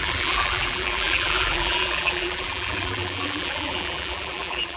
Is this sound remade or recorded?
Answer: remade